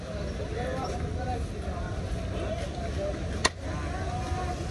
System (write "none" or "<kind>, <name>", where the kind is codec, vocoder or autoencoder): none